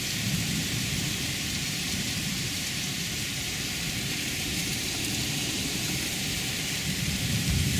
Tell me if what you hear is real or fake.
fake